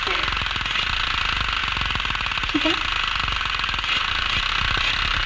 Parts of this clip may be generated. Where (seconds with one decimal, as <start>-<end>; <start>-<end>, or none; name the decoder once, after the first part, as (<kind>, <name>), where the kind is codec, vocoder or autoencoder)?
none